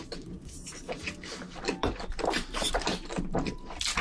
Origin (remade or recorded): remade